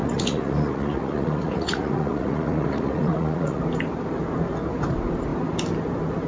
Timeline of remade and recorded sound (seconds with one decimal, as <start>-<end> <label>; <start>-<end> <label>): 0.0-3.6 remade; 3.6-6.3 recorded